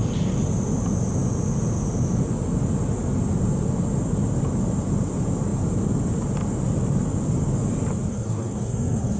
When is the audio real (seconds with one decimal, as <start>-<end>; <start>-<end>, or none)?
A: 0.0-8.1